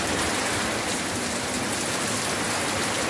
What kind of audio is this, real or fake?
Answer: real